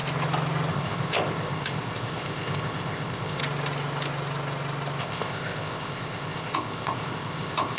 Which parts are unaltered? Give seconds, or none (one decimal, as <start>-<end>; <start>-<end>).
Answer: 0.0-0.7; 3.4-5.0